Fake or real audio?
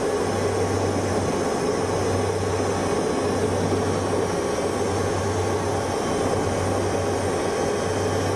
real